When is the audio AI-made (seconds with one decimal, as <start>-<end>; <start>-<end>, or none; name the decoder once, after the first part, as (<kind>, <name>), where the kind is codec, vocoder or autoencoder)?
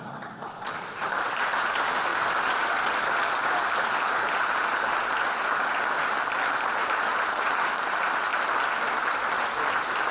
0.0-2.1 (vocoder, BigVGAN v2); 3.7-4.9; 6.0-8.3; 9.7-10.1